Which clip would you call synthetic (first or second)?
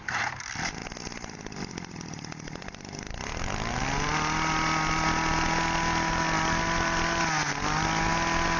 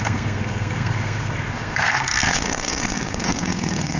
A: second